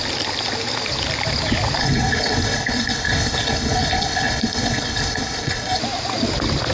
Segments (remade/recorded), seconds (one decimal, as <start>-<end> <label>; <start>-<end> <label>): 0.0-1.8 recorded; 1.8-5.8 remade; 5.8-6.7 recorded